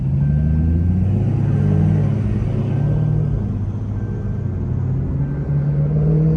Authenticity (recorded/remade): recorded